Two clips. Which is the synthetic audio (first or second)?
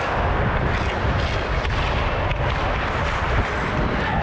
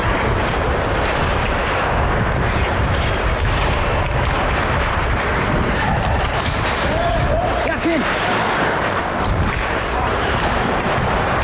second